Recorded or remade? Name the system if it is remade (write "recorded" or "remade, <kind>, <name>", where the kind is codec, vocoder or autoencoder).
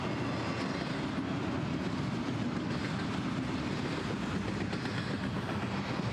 recorded